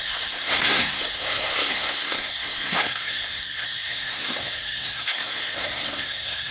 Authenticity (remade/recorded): remade